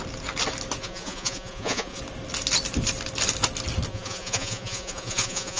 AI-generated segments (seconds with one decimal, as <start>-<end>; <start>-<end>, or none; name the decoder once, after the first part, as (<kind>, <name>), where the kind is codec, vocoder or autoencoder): 0.8-2.0 (vocoder, Vocos); 3.9-5.6